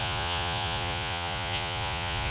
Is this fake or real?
fake